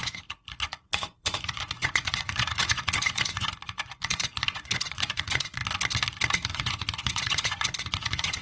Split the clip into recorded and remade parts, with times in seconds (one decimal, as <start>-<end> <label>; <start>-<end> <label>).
0.0-5.6 remade; 5.6-6.5 recorded; 6.5-8.4 remade

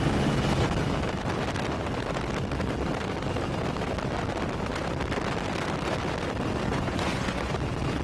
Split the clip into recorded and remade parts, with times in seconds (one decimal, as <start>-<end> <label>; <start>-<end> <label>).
0.0-6.7 recorded; 6.7-7.5 remade; 7.5-8.0 recorded